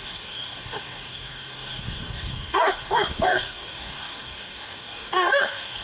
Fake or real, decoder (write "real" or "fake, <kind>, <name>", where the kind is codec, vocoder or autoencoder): fake, codec, DAC